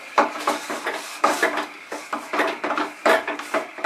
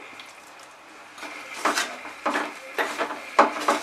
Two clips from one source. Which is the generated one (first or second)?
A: first